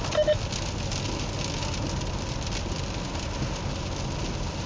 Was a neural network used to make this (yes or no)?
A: no